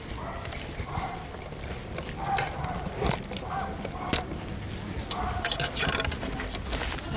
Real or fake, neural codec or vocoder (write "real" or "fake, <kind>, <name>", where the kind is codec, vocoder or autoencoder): real